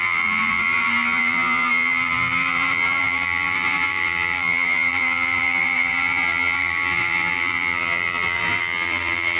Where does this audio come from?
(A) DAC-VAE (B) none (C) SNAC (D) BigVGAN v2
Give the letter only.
D